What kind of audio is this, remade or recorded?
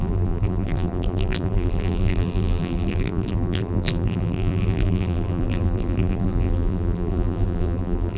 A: remade